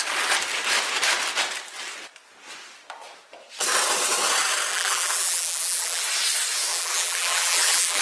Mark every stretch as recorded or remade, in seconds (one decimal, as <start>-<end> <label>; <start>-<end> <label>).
0.0-4.7 recorded; 4.7-6.0 remade; 6.0-6.7 recorded; 6.7-8.0 remade